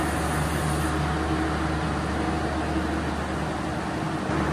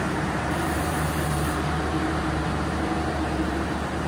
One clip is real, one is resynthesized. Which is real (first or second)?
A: first